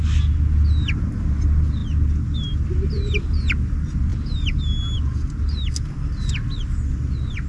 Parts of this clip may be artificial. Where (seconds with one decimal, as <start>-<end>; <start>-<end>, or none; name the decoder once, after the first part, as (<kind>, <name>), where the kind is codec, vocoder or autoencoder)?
none